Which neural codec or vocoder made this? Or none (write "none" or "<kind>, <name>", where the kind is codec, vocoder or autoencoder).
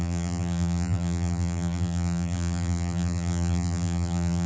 vocoder, BigVGAN v2